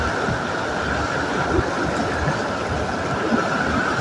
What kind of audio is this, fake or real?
real